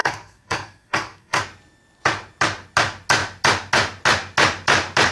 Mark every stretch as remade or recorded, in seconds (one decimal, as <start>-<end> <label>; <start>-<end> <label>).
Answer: 0.0-1.4 remade; 1.4-5.1 recorded